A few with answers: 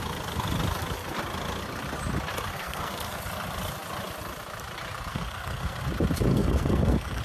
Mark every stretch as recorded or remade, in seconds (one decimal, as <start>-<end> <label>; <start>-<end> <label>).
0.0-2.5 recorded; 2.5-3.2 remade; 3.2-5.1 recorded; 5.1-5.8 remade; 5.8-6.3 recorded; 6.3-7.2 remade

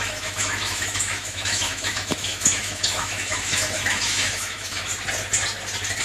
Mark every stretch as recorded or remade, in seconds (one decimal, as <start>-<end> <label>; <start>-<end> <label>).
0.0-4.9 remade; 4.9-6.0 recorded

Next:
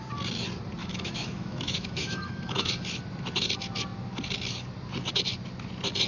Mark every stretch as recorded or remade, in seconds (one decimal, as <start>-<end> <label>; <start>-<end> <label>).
0.0-0.8 recorded; 0.8-2.7 remade; 2.7-6.1 recorded

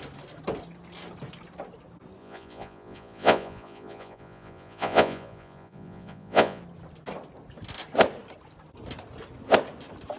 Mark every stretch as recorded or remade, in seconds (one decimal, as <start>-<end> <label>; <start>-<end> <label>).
0.0-2.2 recorded; 2.2-6.6 remade; 6.6-10.2 recorded